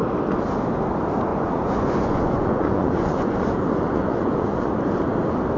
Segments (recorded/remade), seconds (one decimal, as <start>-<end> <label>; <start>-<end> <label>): 0.0-1.3 recorded; 1.3-4.7 remade; 4.7-5.6 recorded